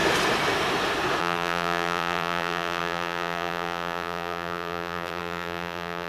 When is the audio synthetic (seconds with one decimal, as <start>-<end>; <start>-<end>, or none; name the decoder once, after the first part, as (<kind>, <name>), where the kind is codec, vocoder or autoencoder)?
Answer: 1.2-6.1 (vocoder, BigVGAN v2)